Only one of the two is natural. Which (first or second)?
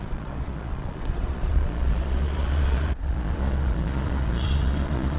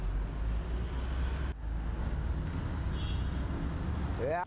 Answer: second